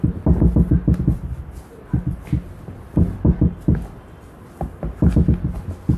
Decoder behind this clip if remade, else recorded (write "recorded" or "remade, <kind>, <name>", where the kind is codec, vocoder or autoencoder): recorded